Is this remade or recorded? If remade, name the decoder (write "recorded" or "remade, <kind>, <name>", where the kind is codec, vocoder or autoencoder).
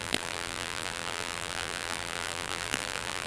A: remade, vocoder, BigVGAN v2